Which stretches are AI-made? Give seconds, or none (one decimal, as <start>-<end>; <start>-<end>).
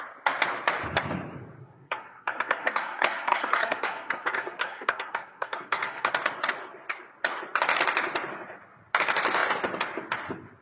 1.6-6.1